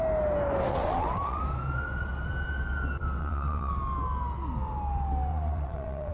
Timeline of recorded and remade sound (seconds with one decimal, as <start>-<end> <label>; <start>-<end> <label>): 0.0-0.7 recorded; 0.7-1.4 remade; 1.4-3.2 recorded; 3.2-3.7 remade; 3.7-5.3 recorded; 5.3-6.1 remade

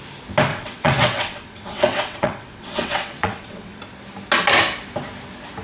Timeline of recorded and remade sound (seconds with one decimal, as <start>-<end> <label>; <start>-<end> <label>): 0.0-0.5 recorded; 0.5-3.8 remade; 3.8-5.6 recorded

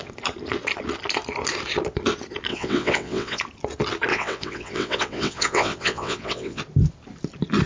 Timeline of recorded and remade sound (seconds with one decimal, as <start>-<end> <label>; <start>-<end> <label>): 0.0-2.5 recorded; 2.5-3.4 remade; 3.4-4.1 recorded; 4.1-6.6 remade; 6.6-7.7 recorded

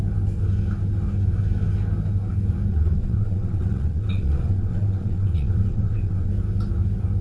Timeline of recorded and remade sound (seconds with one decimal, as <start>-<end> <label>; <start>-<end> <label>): 0.0-2.7 recorded; 2.7-6.3 remade; 6.3-7.2 recorded

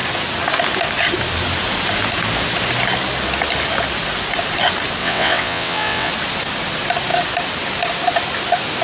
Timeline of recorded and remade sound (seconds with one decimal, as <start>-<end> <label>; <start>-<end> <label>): 0.0-5.0 recorded; 5.0-6.1 remade; 6.1-8.8 recorded

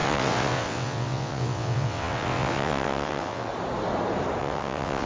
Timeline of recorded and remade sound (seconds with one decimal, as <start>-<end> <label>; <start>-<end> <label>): 0.0-3.5 remade; 3.5-4.4 recorded; 4.4-5.1 remade

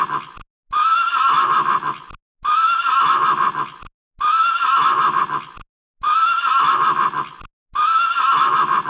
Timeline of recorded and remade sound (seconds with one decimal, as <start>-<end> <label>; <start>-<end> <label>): 0.0-8.9 recorded

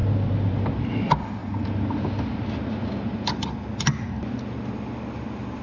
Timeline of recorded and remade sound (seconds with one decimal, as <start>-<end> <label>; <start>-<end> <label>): 0.0-5.6 recorded